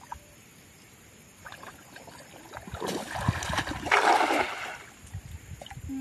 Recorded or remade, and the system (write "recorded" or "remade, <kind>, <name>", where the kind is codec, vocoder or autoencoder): recorded